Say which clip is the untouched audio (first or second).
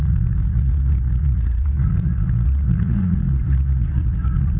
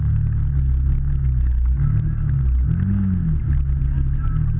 second